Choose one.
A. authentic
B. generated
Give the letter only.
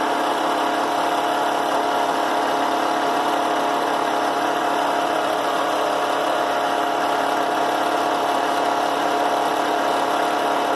B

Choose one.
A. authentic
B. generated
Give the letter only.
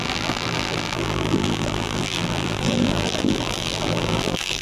B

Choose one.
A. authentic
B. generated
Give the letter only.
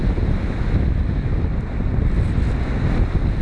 A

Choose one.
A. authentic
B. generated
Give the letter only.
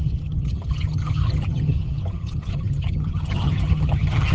B